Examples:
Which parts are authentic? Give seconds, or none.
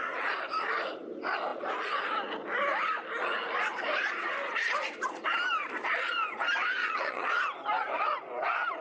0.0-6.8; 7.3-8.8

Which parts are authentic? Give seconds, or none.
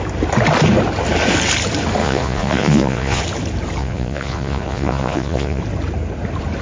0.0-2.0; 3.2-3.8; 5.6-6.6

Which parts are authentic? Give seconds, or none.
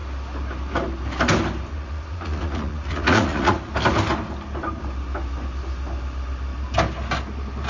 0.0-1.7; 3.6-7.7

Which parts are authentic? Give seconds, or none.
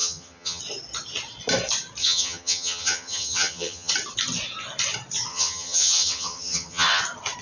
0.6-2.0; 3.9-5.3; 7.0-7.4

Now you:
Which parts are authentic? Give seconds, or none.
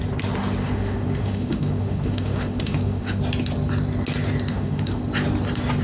0.0-0.6; 3.2-4.5; 5.0-5.8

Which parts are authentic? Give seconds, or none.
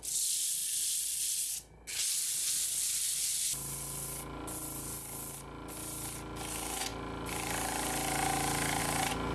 0.0-9.3